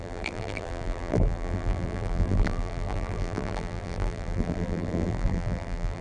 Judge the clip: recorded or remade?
remade